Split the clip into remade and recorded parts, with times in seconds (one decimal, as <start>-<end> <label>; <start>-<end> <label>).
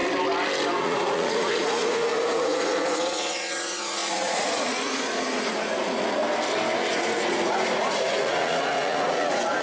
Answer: 0.0-0.8 recorded; 0.8-6.2 remade; 6.2-6.9 recorded; 6.9-9.6 remade